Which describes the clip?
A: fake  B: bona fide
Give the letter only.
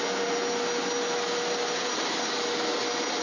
B